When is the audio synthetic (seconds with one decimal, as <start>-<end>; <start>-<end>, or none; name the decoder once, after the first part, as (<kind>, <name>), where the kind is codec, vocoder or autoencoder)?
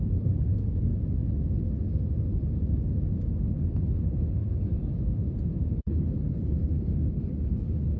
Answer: 0.0-0.9 (codec, HILCodec); 3.5-4.8; 5.7-8.0